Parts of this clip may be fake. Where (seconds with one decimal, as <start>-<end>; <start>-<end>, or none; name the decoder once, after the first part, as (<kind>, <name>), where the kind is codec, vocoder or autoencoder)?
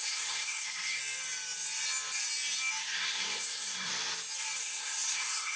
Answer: 0.0-1.0 (codec, SNAC); 2.8-3.9; 4.6-5.6